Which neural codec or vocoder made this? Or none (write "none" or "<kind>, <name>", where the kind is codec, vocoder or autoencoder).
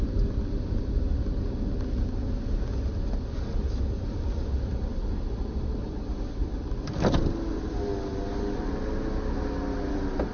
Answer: none